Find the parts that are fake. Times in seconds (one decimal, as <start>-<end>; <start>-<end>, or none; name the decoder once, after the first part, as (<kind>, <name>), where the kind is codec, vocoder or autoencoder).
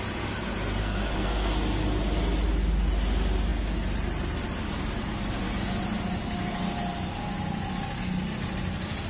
0.8-1.5 (codec, SNAC)